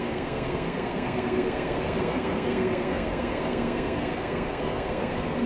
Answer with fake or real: fake